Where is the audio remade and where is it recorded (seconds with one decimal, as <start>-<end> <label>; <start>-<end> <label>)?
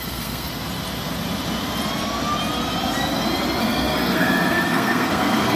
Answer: 0.0-0.5 remade; 0.5-3.6 recorded; 3.6-5.6 remade